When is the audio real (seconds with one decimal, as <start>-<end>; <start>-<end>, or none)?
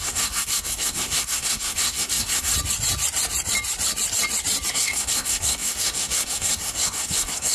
2.5-4.7